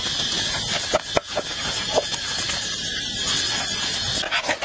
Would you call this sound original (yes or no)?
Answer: yes